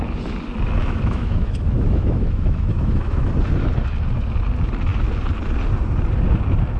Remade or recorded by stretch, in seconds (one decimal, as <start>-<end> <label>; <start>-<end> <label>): 0.0-0.8 recorded; 0.8-3.3 remade; 3.3-6.8 recorded